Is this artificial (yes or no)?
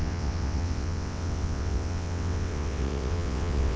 yes